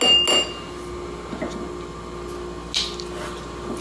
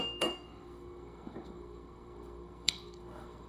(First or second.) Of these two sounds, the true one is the first